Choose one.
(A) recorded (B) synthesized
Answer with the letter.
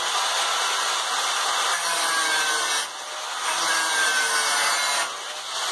A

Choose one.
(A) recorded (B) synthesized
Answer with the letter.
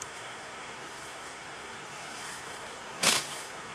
B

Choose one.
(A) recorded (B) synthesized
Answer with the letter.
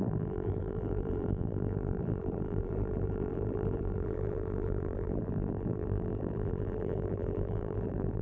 B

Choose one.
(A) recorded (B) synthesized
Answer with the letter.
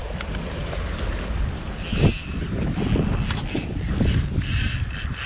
A